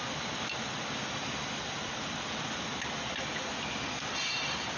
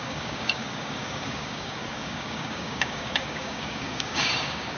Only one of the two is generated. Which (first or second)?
second